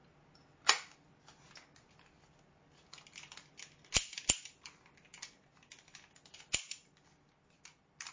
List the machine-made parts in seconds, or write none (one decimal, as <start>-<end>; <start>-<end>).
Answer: none